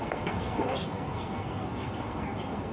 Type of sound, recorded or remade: remade